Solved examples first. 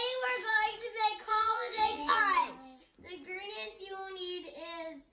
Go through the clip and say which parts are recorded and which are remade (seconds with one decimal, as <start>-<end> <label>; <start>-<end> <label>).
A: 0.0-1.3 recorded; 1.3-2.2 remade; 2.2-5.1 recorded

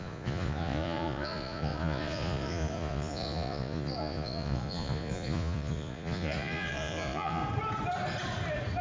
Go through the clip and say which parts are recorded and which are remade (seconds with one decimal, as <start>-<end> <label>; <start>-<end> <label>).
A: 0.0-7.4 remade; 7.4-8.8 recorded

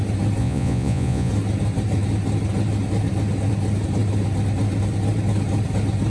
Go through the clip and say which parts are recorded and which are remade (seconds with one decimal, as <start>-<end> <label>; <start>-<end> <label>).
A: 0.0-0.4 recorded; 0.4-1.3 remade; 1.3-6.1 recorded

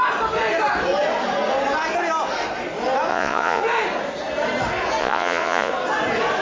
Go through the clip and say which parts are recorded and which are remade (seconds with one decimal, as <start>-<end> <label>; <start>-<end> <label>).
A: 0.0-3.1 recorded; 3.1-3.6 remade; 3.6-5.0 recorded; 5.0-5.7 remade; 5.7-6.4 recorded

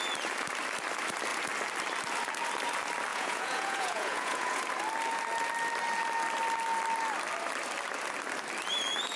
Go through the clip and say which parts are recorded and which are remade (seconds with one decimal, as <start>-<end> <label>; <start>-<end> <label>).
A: 0.0-3.1 recorded; 3.1-4.6 remade; 4.6-9.2 recorded